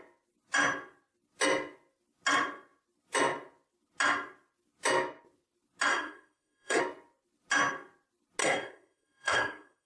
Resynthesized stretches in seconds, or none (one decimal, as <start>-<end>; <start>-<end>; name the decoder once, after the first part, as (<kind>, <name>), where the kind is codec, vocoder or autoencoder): 5.9-6.8 (codec, SNAC); 8.4-9.9